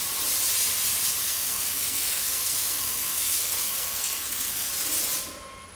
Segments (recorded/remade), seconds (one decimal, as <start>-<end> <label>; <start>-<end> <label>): 0.0-1.2 recorded; 1.2-4.7 remade; 4.7-5.8 recorded